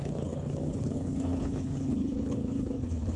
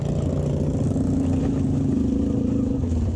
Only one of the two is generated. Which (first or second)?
first